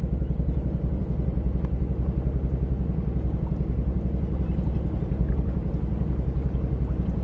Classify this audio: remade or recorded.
recorded